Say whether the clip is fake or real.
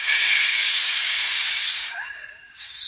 fake